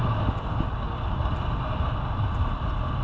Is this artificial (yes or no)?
no